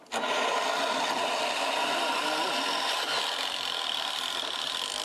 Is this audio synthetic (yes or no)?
no